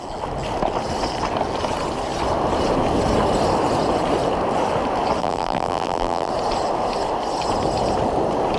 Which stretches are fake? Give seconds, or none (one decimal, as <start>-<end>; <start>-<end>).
5.2-6.3